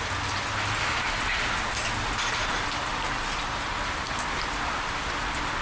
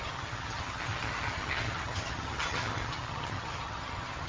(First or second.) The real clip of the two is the first